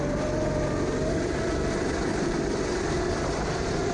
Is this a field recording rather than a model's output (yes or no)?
yes